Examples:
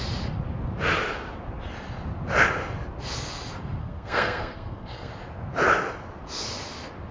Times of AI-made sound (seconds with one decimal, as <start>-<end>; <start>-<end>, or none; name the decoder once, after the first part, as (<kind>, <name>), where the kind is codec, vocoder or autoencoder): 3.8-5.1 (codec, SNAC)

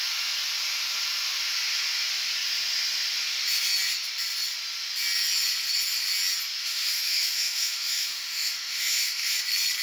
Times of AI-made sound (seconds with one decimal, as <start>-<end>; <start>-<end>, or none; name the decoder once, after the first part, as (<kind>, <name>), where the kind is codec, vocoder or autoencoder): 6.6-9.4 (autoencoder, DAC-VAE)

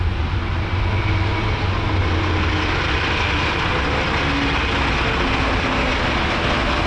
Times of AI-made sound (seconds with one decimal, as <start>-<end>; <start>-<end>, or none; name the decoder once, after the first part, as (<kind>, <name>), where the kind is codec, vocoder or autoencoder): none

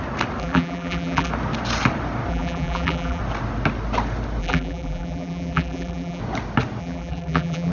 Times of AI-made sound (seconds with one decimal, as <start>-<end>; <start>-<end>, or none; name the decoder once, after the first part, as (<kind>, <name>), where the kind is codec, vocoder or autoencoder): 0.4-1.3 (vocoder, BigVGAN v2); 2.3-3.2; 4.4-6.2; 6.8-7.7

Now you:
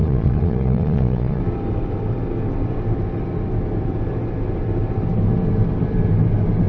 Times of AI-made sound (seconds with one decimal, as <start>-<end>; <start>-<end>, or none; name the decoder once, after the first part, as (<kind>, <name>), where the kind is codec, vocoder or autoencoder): 0.0-1.4 (vocoder, Vocos)

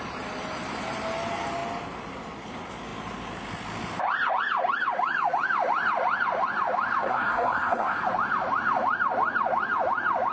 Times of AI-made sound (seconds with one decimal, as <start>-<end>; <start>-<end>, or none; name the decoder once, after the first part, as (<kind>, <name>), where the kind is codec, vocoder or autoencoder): 7.0-8.0 (codec, SNAC)